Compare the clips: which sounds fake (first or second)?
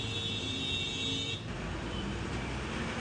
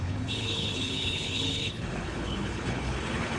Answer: second